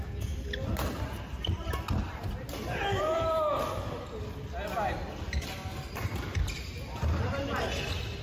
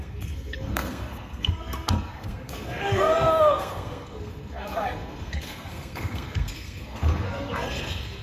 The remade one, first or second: second